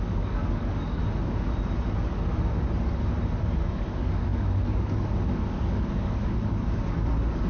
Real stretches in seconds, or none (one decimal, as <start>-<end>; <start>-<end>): 1.0-3.6